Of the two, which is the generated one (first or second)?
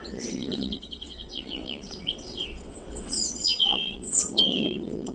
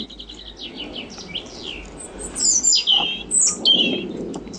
first